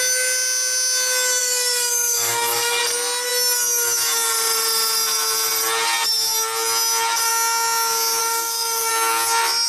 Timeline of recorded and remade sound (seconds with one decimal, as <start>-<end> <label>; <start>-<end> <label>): 0.0-1.4 recorded; 1.4-2.8 remade; 2.8-8.2 recorded; 8.2-8.9 remade; 8.9-9.7 recorded